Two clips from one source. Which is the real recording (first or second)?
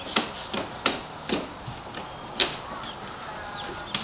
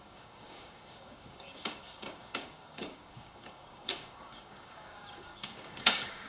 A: first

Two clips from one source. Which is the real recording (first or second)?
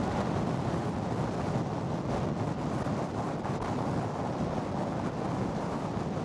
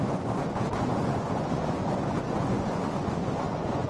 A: first